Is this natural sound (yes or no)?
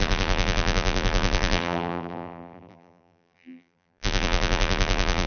no